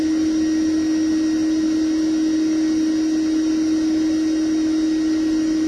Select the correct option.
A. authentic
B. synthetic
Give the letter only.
A